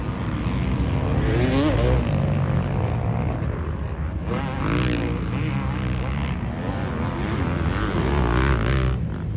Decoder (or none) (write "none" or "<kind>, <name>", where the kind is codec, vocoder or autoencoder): none